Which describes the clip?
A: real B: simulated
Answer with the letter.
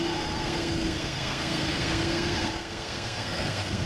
B